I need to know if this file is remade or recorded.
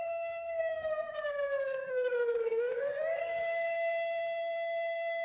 remade